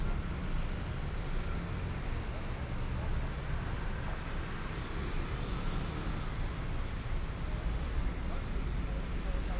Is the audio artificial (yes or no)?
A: no